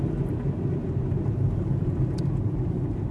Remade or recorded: recorded